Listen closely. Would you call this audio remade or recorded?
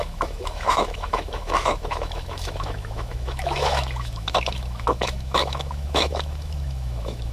remade